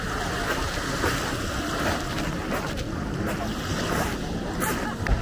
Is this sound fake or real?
real